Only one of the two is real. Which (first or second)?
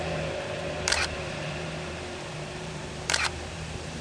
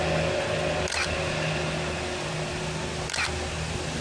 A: second